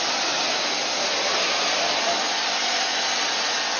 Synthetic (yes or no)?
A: no